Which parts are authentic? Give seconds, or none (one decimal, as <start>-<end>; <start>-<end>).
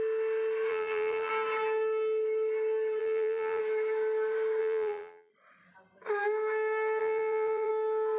0.0-0.7; 1.3-3.0; 3.6-4.6; 5.3-7.0; 7.7-8.2